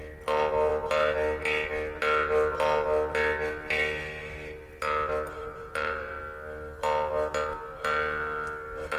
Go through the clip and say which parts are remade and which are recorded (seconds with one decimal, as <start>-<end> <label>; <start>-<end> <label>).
0.0-5.4 recorded; 5.4-6.2 remade; 6.2-9.0 recorded